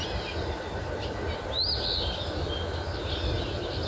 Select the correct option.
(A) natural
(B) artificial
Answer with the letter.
A